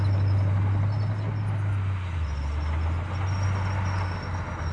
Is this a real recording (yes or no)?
yes